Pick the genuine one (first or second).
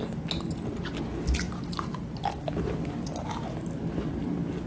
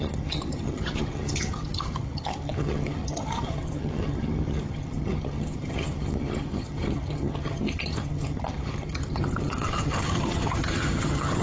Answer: first